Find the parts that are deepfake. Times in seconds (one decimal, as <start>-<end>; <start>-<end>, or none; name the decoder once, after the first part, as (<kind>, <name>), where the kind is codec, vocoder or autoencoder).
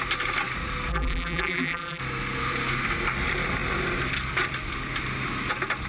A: 0.9-2.0 (vocoder, BigVGAN v2)